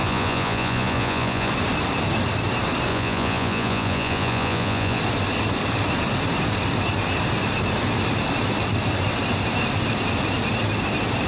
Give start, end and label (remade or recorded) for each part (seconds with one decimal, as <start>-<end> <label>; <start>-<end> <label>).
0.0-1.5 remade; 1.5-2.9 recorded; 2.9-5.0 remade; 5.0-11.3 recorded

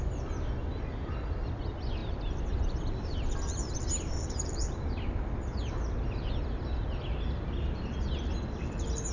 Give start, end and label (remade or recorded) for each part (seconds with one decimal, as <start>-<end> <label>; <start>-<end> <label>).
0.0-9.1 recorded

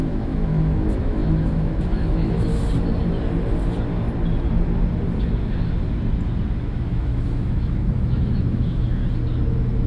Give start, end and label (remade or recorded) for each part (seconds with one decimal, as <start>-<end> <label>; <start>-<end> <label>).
0.0-2.5 remade; 2.5-6.6 recorded; 6.6-9.0 remade; 9.0-9.5 recorded; 9.5-9.9 remade

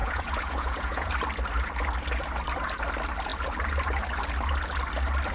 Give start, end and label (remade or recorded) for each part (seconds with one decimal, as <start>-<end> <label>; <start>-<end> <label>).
0.0-1.1 remade; 1.1-5.3 recorded

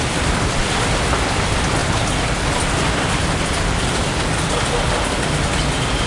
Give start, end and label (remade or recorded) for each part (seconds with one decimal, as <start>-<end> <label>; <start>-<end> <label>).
0.0-6.1 recorded

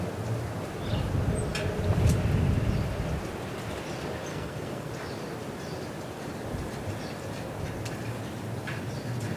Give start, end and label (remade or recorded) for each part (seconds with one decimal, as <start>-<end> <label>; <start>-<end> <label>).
0.0-4.3 recorded; 4.3-4.9 remade; 4.9-9.4 recorded